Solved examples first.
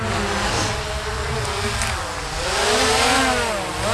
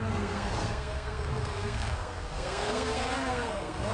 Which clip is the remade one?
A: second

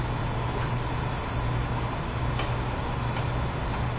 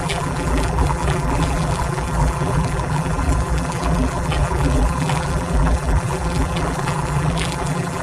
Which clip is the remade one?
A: second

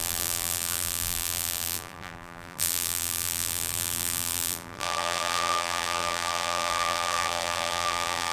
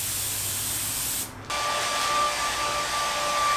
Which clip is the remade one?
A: first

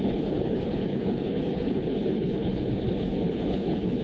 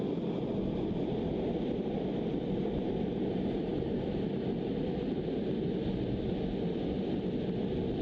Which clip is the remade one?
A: first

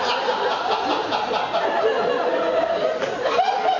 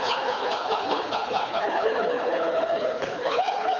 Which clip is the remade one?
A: second